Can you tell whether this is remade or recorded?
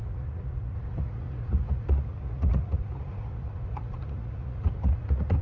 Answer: remade